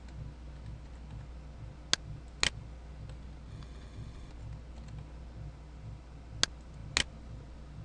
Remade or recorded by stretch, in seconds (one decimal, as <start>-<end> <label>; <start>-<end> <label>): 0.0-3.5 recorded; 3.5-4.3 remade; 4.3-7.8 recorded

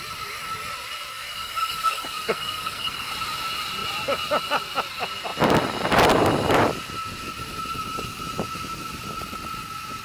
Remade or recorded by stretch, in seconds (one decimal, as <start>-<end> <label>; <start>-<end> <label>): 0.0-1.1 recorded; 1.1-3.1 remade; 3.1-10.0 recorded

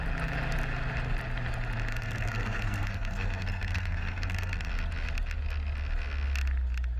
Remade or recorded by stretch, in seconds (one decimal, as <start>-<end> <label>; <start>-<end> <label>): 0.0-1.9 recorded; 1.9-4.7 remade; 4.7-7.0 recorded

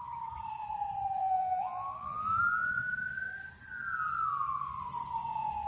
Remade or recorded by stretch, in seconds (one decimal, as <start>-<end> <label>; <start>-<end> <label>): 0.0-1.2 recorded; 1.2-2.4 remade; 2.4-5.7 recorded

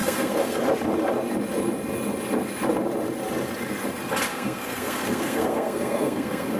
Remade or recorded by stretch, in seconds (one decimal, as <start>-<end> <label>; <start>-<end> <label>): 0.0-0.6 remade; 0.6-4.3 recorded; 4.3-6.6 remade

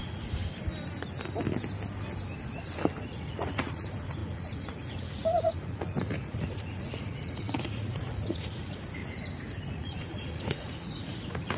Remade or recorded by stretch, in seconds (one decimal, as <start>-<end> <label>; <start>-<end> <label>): 0.0-0.4 remade; 0.4-3.0 recorded; 3.0-9.0 remade; 9.0-9.7 recorded; 9.7-11.6 remade

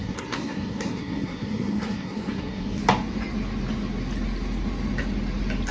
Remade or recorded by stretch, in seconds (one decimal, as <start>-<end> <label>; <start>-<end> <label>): 0.0-2.8 remade; 2.8-5.7 recorded

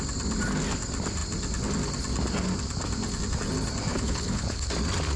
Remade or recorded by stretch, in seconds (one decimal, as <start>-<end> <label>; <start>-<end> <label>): 0.0-3.9 recorded; 3.9-4.7 remade; 4.7-5.2 recorded